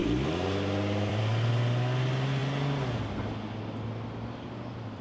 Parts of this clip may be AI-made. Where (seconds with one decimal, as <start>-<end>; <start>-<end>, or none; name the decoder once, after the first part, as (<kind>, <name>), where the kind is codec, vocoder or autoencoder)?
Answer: 0.0-1.2 (vocoder, BigVGAN v2)